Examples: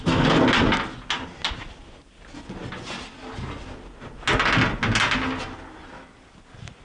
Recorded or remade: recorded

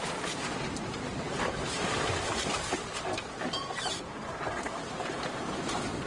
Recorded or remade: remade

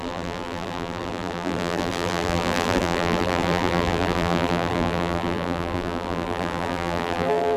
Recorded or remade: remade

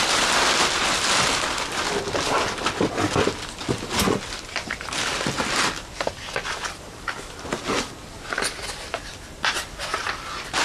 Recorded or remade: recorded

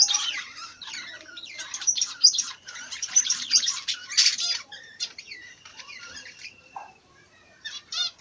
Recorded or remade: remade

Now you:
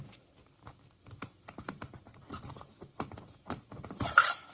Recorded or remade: remade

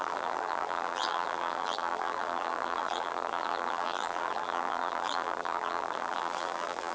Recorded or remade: remade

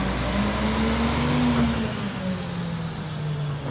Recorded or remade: recorded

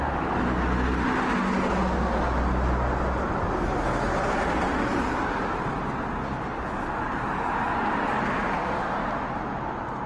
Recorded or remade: recorded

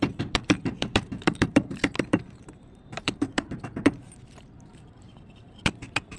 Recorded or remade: remade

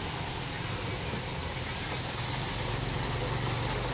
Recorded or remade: recorded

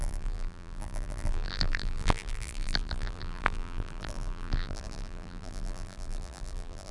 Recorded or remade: remade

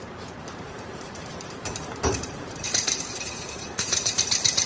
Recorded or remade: remade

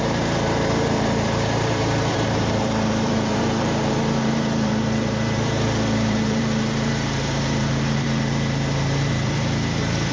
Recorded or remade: remade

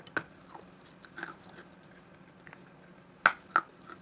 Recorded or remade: recorded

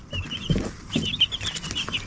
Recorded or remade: recorded